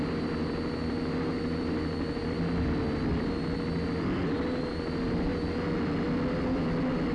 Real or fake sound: real